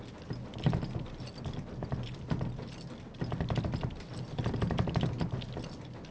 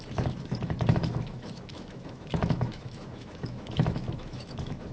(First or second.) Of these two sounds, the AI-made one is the second